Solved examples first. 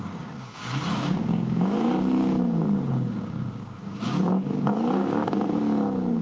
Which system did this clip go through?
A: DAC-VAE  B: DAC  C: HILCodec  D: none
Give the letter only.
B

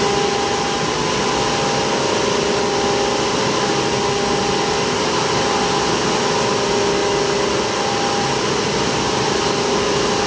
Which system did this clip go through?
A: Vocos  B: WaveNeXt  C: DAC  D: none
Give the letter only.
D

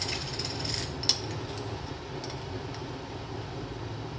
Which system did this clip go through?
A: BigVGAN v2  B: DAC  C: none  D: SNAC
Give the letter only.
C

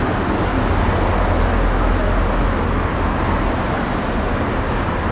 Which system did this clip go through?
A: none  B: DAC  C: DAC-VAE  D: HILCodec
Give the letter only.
A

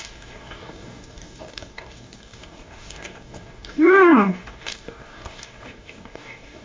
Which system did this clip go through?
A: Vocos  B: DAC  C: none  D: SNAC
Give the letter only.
B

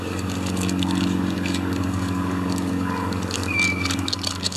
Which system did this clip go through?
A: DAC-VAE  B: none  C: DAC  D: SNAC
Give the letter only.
C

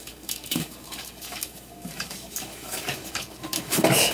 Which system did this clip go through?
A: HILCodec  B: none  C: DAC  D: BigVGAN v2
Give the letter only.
C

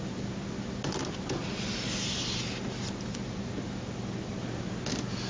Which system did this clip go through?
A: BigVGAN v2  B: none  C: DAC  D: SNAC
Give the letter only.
B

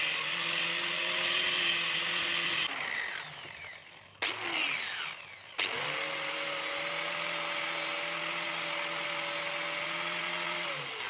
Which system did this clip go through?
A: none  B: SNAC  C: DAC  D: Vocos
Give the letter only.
A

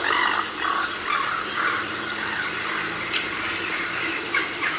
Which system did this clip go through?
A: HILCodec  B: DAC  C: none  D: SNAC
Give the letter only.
C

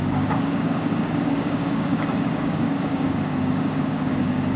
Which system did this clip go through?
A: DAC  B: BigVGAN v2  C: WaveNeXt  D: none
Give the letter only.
A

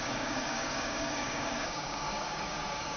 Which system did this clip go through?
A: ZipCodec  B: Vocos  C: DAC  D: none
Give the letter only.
C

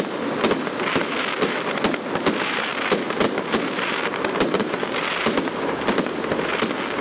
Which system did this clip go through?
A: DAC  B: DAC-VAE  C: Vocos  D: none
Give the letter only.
D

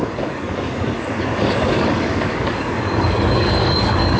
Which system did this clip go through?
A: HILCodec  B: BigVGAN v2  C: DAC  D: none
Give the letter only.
C